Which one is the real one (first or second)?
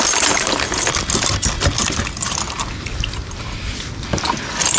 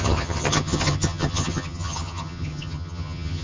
first